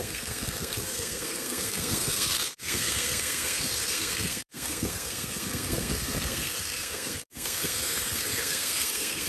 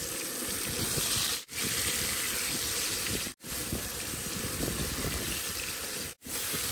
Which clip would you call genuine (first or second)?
second